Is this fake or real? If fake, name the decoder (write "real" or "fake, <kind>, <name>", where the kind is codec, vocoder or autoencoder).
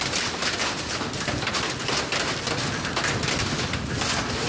real